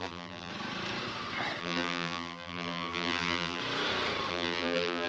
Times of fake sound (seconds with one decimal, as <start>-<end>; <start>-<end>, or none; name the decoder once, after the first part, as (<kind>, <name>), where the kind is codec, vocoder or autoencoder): 0.0-0.5 (vocoder, BigVGAN v2); 1.6-3.6; 4.3-5.1